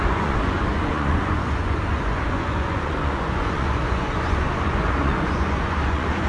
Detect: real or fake fake